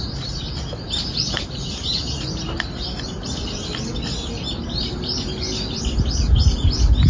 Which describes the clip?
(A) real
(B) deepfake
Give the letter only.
A